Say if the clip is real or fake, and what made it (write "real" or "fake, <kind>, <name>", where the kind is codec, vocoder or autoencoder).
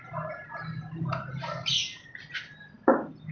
real